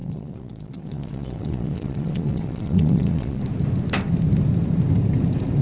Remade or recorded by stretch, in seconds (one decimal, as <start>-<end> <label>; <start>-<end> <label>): 0.0-3.4 remade; 3.4-5.6 recorded